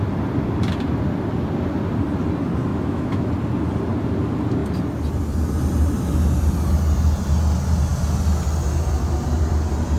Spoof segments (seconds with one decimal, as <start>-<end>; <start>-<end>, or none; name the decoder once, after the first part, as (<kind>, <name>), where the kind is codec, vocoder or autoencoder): 2.7-3.3 (autoencoder, DAC-VAE)